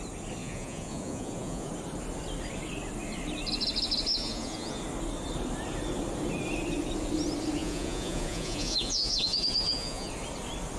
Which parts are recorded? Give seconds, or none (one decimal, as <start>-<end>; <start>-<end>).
0.0-0.4; 1.7-4.2; 4.8-7.6; 10.1-10.8